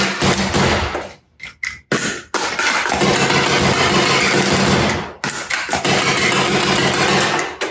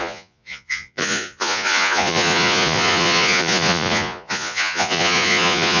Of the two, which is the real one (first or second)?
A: first